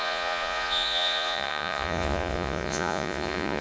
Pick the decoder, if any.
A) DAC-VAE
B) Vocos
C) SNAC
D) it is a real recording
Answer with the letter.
B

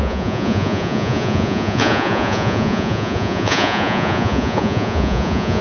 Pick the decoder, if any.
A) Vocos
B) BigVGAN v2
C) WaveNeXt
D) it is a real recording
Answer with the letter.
A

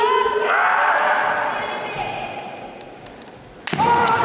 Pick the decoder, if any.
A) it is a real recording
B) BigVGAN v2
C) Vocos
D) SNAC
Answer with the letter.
A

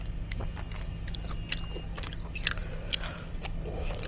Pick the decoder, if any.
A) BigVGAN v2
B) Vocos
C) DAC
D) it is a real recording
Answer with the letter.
D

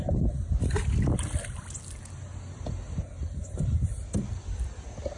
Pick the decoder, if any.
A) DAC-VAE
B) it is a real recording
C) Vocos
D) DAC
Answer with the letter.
B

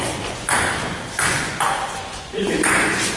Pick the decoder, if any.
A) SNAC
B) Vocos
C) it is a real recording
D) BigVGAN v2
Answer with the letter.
B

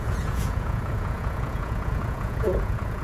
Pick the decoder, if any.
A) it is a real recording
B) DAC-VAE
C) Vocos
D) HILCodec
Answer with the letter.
C